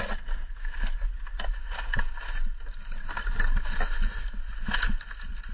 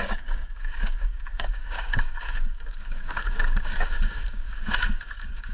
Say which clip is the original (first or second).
first